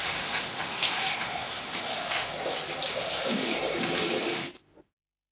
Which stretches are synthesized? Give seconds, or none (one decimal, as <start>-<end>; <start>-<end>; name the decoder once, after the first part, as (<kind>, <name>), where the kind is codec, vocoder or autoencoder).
0.0-2.3 (autoencoder, DAC-VAE); 2.9-3.5; 4.2-5.3